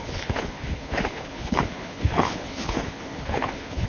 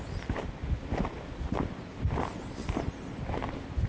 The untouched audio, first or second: second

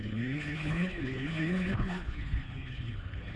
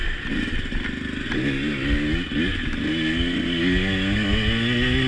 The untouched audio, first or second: second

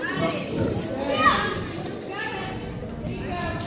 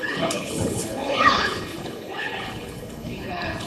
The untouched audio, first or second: first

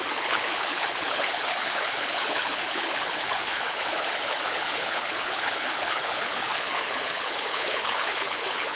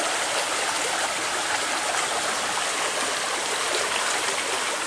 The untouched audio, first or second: second